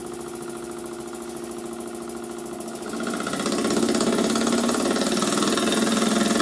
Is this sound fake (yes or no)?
no